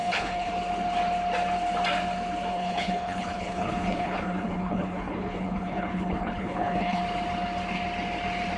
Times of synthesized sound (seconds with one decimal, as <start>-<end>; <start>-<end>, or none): 0.0-0.5; 2.5-7.0